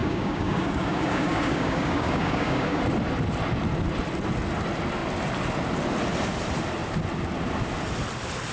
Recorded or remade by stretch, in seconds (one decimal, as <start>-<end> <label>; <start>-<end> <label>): 0.0-2.8 remade; 2.8-8.5 recorded